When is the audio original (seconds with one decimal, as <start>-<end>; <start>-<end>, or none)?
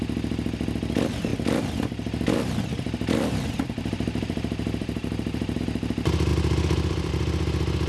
0.0-1.3; 5.6-6.3; 7.1-7.9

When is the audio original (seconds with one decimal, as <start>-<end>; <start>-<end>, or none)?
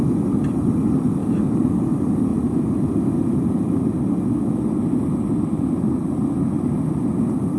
0.0-7.6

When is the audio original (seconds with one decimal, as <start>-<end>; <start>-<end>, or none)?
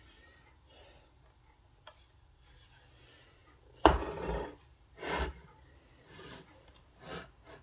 0.0-7.6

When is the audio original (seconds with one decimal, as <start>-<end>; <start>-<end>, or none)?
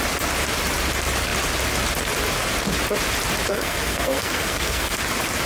0.0-3.5; 5.0-5.5